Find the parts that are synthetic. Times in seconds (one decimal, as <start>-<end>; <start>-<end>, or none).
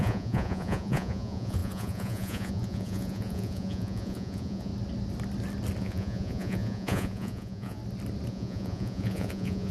0.0-4.7; 5.8-7.8; 8.3-9.7